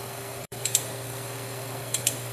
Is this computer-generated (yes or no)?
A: yes